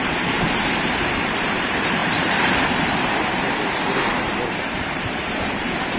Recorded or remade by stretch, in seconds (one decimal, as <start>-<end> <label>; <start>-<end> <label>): 0.0-6.0 remade